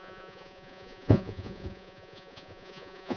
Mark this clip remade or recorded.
remade